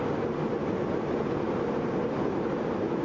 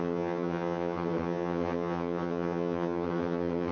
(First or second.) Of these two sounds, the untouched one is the first